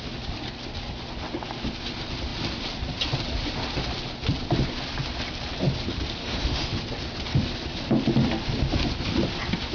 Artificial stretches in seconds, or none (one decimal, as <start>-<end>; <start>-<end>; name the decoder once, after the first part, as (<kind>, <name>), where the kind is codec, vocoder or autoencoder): 6.2-6.7 (autoencoder, DAC-VAE)